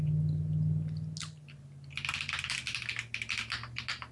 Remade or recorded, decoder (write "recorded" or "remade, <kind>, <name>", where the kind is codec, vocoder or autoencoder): recorded